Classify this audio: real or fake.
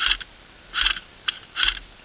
real